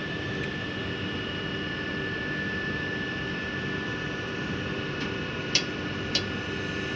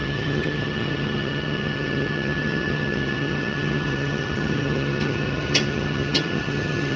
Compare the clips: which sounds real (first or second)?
first